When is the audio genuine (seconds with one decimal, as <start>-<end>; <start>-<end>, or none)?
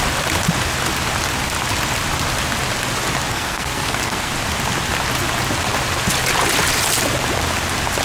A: 0.0-3.3; 4.3-8.0